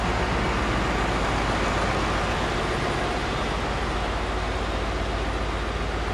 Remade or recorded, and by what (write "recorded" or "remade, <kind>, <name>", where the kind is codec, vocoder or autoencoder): recorded